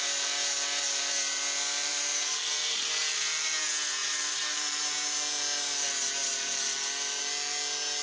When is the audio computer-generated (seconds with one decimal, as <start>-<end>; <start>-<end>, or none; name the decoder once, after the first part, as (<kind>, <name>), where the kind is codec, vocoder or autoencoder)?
1.9-3.0 (vocoder, BigVGAN v2); 4.0-4.8